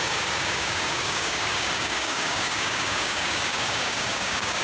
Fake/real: fake